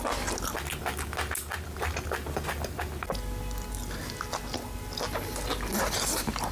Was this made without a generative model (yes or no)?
yes